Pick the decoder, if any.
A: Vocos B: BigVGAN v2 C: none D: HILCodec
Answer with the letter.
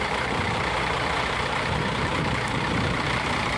B